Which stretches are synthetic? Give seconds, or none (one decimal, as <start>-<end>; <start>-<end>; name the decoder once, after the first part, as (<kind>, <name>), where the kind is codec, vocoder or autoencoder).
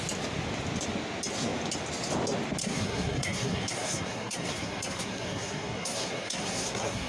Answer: 2.6-7.1 (codec, SNAC)